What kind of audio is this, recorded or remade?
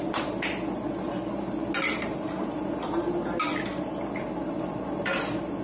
recorded